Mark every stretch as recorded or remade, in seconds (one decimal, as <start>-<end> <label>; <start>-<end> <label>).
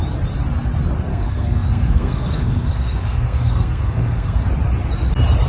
0.0-1.1 recorded; 1.1-4.4 remade; 4.4-5.5 recorded